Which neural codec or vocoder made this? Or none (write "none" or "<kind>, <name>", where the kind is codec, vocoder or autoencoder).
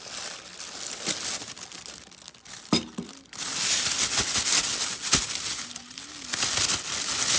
none